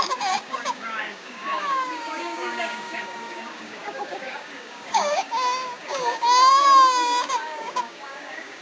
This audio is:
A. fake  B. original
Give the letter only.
A